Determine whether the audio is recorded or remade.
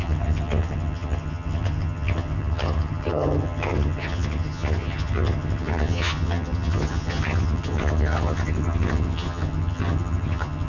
remade